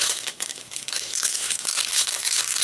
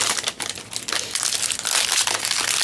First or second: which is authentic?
second